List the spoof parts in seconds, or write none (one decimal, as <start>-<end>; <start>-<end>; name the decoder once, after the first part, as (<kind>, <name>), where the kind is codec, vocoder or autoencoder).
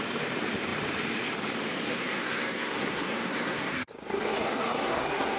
1.9-5.4 (codec, SNAC)